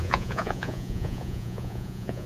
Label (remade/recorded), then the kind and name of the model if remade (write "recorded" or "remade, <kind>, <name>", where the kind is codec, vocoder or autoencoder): remade, vocoder, Vocos